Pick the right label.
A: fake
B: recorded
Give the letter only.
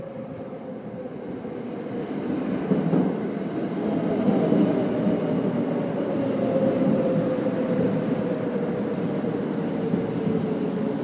B